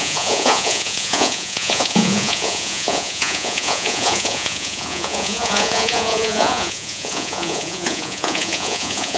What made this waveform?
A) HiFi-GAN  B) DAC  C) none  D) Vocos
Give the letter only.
D